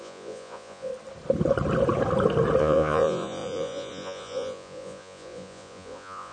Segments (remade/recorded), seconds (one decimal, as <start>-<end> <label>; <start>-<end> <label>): 0.0-0.9 remade; 0.9-2.6 recorded; 2.6-6.3 remade